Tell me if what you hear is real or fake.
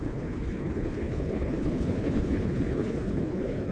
fake